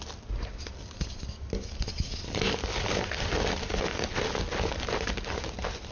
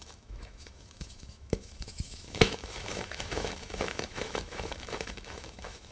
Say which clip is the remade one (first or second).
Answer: second